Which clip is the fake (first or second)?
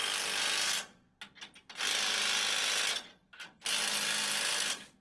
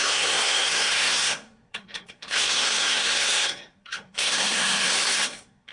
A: second